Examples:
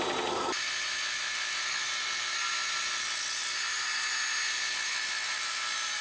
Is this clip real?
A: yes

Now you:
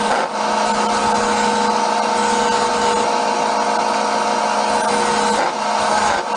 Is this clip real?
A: yes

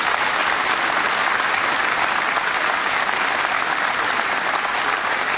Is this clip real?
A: yes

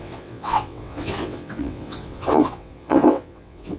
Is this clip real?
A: no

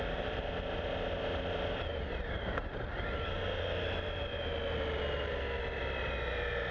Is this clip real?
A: yes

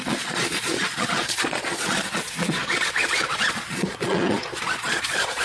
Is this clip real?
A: no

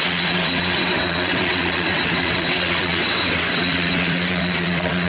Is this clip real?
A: no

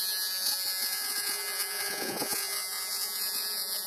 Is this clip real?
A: no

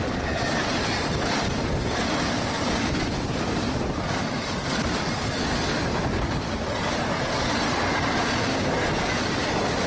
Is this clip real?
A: yes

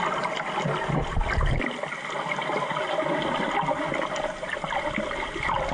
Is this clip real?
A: yes